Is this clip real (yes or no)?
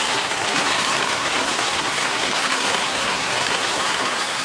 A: no